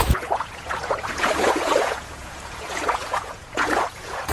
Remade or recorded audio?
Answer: remade